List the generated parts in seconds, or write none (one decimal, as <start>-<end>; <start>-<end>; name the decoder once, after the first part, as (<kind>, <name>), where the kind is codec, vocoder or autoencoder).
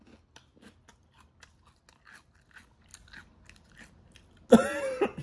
none